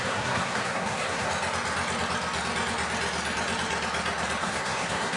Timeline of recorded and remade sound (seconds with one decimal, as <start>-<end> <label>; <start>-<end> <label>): 0.0-1.3 remade; 1.3-4.4 recorded; 4.4-5.2 remade